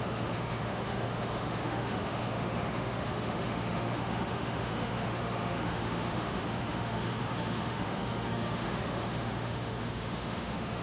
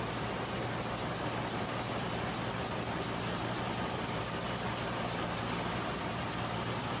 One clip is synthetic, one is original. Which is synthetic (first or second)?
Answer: first